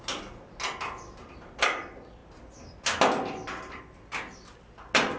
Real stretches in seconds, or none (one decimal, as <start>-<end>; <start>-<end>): 0.0-5.2